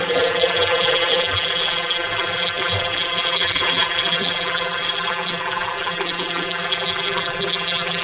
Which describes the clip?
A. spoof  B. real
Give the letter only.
A